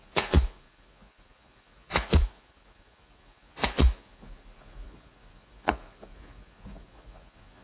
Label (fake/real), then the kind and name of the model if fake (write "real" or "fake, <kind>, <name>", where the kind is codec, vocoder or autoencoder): fake, vocoder, Vocos